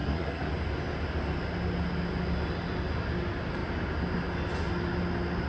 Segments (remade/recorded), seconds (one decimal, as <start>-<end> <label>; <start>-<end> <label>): 0.0-0.5 remade; 0.5-5.5 recorded